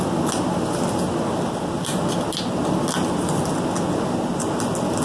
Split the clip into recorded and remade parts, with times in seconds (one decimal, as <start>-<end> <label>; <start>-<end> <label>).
0.0-5.0 recorded